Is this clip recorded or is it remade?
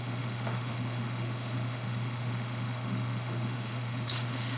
remade